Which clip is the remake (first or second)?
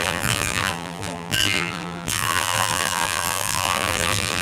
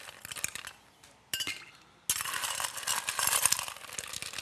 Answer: first